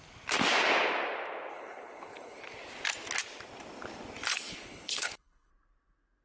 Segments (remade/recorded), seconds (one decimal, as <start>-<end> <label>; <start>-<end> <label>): 0.0-1.5 recorded; 1.5-2.4 remade; 2.4-4.3 recorded; 4.3-5.5 remade; 5.5-6.2 recorded